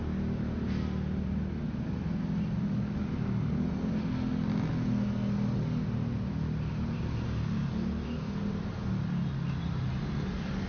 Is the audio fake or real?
real